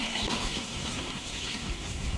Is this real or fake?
fake